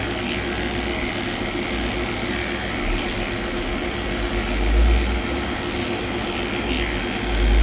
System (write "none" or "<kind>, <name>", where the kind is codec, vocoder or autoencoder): none